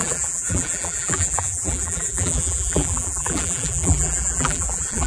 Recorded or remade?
remade